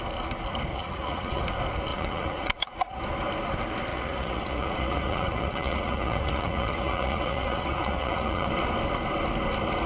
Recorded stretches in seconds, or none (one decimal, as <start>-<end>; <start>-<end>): 0.0-0.7; 1.4-1.9; 3.0-3.9; 8.5-9.9